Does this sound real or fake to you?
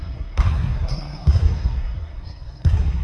fake